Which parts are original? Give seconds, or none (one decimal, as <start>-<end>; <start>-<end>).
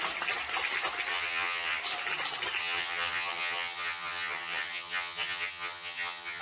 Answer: 0.0-1.1; 1.8-2.6